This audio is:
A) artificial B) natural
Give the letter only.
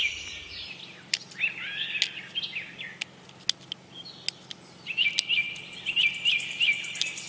B